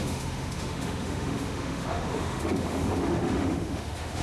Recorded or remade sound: remade